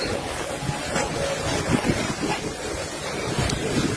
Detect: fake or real real